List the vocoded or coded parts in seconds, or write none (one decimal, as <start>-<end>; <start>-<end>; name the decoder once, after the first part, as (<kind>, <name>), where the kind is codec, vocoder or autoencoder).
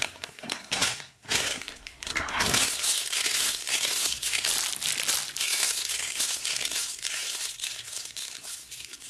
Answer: 0.0-4.5 (codec, SNAC); 5.4-9.1